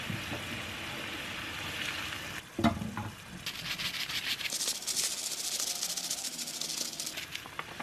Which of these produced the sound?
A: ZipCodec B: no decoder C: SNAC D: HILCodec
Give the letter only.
B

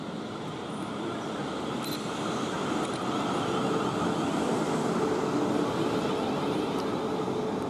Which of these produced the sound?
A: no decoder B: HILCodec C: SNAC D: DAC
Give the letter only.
A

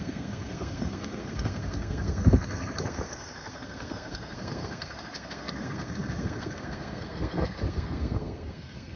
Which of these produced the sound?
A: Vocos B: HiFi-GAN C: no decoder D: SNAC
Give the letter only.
D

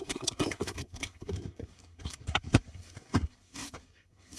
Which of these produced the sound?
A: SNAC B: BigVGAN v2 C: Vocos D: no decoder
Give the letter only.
A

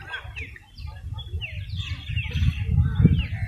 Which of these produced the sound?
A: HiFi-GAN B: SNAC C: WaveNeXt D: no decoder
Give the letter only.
D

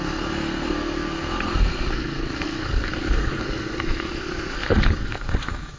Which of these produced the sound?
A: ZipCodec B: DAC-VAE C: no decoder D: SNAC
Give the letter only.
D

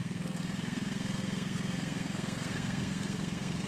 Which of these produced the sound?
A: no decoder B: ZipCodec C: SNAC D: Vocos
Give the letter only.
C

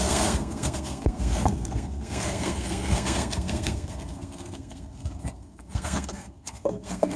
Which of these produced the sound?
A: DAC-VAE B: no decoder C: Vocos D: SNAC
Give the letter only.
D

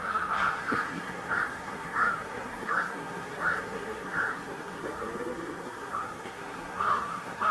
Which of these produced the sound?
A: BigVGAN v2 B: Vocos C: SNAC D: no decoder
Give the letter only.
C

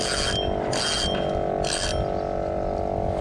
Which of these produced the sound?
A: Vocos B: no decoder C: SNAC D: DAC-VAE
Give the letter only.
B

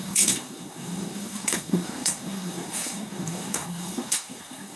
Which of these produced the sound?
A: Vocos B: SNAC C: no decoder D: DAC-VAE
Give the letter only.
B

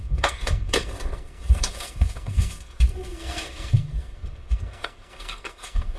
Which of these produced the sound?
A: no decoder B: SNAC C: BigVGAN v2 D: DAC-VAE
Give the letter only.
B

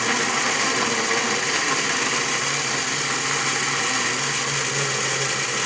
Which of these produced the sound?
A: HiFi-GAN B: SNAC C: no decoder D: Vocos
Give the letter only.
C